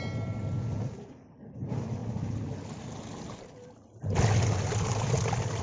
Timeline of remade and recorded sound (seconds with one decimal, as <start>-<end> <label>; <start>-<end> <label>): 0.0-5.6 recorded